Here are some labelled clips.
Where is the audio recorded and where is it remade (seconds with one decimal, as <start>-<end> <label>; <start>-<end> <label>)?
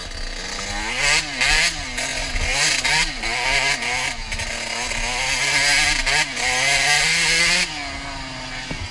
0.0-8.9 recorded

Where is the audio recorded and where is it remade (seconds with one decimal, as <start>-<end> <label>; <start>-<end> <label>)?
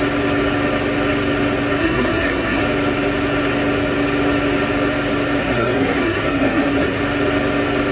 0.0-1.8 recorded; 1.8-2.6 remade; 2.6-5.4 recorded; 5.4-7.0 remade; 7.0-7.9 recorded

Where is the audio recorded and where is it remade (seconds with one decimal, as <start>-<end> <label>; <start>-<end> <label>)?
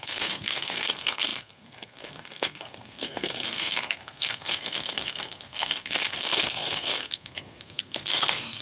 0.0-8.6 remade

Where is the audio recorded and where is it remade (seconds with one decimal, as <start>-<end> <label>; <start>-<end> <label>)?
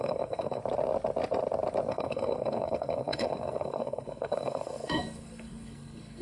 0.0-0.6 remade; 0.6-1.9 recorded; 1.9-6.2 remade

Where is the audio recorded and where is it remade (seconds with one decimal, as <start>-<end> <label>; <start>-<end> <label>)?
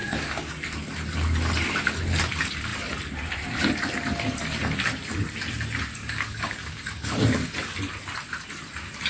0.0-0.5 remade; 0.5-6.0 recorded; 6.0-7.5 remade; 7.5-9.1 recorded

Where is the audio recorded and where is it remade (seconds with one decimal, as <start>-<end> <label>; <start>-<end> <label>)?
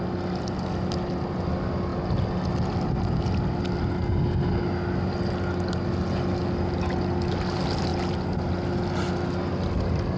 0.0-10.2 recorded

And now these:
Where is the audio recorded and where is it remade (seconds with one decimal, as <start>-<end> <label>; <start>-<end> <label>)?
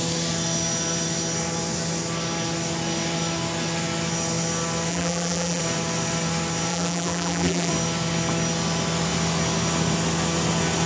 0.0-4.9 recorded; 4.9-5.6 remade; 5.6-6.7 recorded; 6.7-7.7 remade; 7.7-10.9 recorded